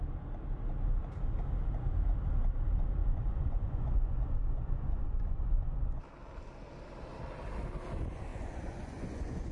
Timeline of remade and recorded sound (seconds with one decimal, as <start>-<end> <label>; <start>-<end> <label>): 0.0-3.0 recorded; 3.0-6.0 remade; 6.0-8.3 recorded; 8.3-9.5 remade